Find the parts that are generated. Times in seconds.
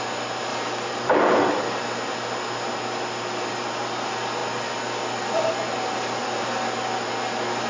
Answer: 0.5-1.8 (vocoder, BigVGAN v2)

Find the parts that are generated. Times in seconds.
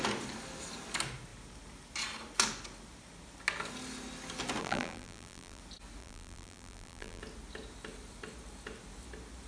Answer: 4.6-5.6 (vocoder, BigVGAN v2); 6.0-7.2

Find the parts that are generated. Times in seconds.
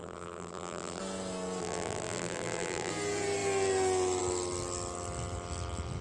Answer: 0.0-1.0 (vocoder, BigVGAN v2); 1.6-2.9